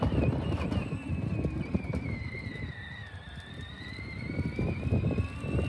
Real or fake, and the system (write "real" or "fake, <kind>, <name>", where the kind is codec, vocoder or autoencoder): real